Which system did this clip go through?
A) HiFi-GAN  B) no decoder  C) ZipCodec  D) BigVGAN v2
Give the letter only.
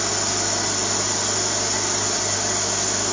B